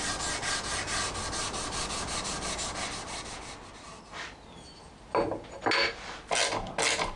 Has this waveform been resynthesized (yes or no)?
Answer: no